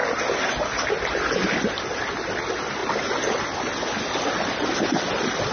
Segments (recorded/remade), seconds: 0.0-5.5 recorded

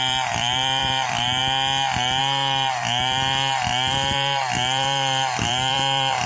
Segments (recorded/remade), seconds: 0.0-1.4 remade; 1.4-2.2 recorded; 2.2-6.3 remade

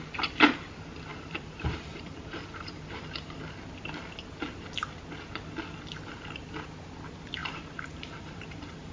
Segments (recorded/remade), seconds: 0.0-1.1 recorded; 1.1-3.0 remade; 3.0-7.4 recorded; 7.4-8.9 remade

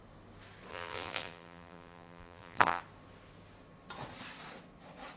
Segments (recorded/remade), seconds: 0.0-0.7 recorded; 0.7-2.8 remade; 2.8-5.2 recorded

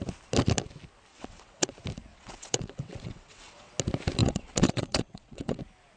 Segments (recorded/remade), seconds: 0.0-1.1 recorded; 1.1-1.7 remade; 1.7-2.1 recorded; 2.1-3.7 remade; 3.7-4.2 recorded; 4.2-5.6 remade; 5.6-6.0 recorded

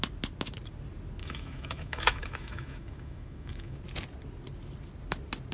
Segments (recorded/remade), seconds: 0.0-1.2 recorded; 1.2-3.8 remade; 3.8-5.5 recorded

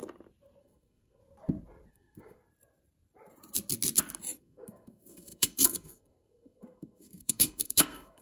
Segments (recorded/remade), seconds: 0.0-0.6 recorded; 0.6-1.2 remade; 1.2-1.9 recorded; 1.9-2.4 remade; 2.4-4.4 recorded; 4.4-8.2 remade

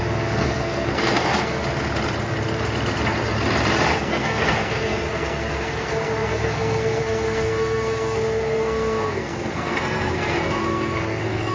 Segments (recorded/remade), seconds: 0.0-1.6 remade; 1.6-4.0 recorded; 4.0-11.5 remade